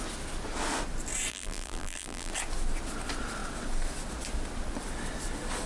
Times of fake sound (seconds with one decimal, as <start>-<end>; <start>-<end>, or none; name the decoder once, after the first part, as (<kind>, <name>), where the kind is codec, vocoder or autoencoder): 1.3-2.3 (vocoder, BigVGAN v2)